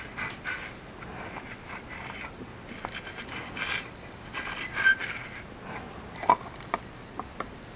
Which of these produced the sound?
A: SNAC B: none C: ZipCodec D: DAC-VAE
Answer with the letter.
B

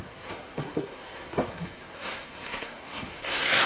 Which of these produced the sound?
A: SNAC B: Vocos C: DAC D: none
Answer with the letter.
A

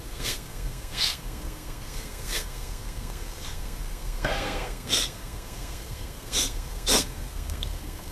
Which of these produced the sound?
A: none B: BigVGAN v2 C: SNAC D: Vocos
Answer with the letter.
C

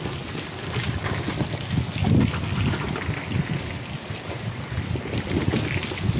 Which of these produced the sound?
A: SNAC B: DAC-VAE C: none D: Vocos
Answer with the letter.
C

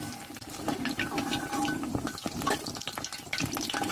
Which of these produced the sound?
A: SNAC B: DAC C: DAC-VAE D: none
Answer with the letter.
D